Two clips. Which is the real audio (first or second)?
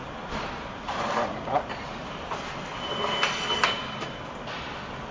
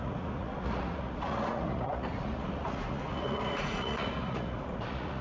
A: first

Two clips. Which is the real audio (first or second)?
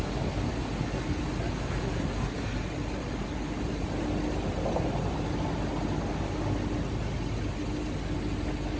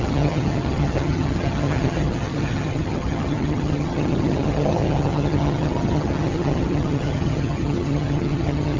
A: first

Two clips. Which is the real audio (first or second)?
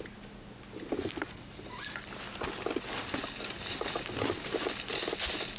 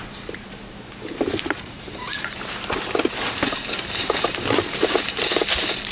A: first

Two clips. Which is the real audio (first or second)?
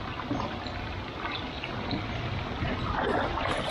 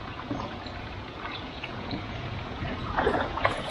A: first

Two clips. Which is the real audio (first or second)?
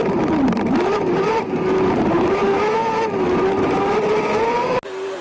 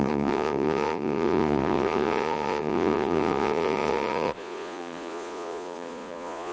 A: first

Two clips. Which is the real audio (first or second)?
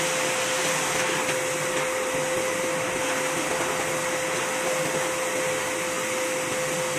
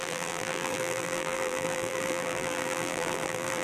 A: first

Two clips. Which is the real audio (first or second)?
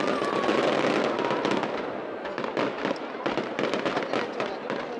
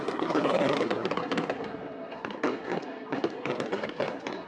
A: first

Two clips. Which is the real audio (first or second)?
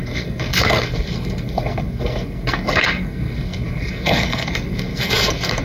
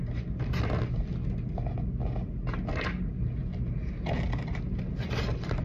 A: second